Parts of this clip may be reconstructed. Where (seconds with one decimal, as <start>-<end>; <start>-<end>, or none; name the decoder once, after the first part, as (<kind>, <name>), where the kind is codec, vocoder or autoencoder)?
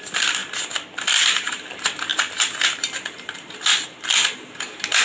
none